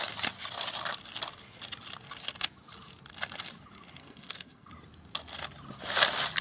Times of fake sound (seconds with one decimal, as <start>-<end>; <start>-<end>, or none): 4.0-4.7